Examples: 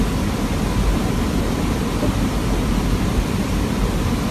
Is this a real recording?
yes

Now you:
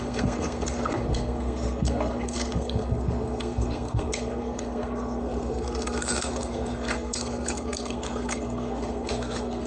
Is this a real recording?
no